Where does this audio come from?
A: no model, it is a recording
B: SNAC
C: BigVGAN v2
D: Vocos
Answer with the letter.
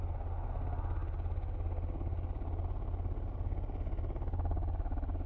A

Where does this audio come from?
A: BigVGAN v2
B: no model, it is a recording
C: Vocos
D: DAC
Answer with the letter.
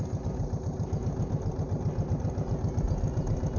B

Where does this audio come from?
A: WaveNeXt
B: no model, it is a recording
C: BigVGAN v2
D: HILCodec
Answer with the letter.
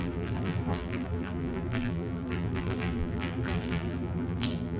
C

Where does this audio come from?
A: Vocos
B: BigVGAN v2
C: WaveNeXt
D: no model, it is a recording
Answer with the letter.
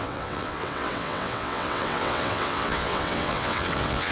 C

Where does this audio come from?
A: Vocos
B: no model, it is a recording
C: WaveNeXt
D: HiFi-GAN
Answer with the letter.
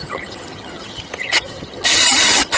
D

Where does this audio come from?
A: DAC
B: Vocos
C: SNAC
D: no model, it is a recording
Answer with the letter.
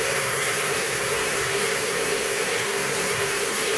C